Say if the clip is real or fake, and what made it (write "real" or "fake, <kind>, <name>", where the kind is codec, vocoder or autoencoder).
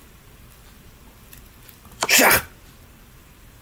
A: fake, vocoder, BigVGAN v2